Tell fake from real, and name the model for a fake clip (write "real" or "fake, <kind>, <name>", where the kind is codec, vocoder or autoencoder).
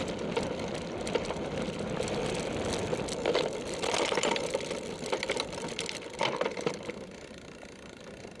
real